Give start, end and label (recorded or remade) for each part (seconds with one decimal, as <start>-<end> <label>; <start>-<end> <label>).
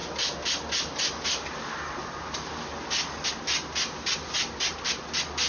0.0-5.5 recorded